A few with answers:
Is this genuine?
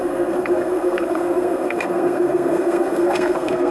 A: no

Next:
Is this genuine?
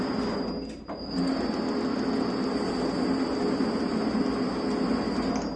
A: yes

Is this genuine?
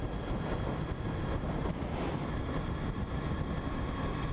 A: yes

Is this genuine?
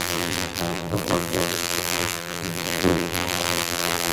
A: no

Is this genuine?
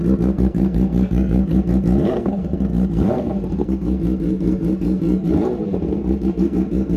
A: no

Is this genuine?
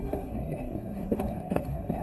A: no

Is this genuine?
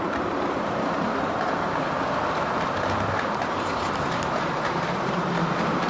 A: no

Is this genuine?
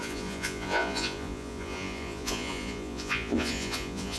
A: no